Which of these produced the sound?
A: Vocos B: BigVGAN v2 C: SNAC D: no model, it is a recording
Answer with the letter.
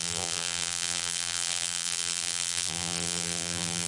B